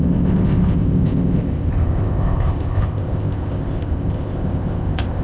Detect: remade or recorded remade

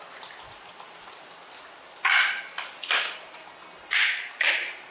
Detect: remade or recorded recorded